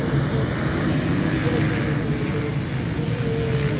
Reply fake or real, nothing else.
real